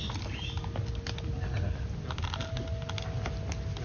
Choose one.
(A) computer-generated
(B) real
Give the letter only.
B